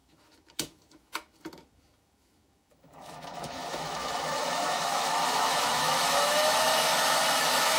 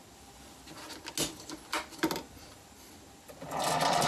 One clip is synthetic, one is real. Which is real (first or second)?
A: second